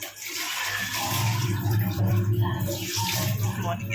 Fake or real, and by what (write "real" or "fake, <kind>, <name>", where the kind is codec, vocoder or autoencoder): real